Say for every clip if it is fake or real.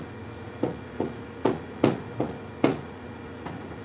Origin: fake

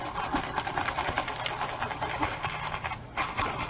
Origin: real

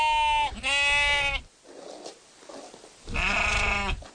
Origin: real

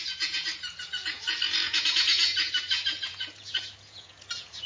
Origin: fake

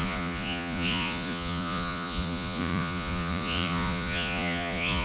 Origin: fake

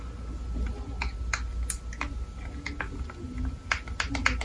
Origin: real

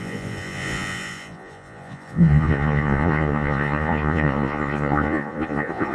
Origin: fake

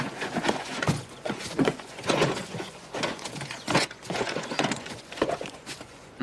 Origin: fake